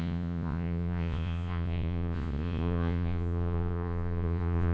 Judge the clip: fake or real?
fake